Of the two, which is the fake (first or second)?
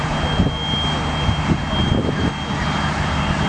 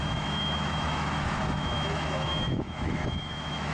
second